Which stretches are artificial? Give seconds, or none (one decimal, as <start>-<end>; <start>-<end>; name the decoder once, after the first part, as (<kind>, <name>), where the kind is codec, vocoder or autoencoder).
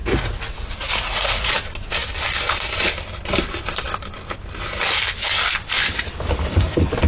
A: 0.0-1.5 (vocoder, Vocos)